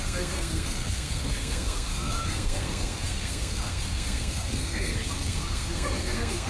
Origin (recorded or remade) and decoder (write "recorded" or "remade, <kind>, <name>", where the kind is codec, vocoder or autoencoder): remade, codec, SNAC